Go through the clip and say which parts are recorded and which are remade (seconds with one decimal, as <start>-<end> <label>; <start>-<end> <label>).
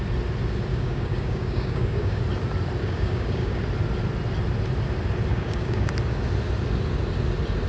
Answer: 0.0-0.7 recorded; 0.7-2.2 remade; 2.2-2.8 recorded; 2.8-3.6 remade; 3.6-5.3 recorded; 5.3-5.9 remade; 5.9-7.7 recorded